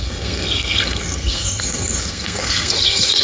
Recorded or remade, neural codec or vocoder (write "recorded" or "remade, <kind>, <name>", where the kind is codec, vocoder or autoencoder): remade, codec, SNAC